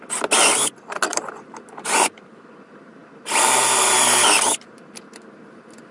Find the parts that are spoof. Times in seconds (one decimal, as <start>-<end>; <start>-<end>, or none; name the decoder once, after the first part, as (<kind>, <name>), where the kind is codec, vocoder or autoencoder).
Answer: 1.1-2.5 (vocoder, BigVGAN v2)